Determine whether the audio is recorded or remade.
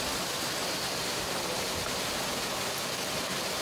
recorded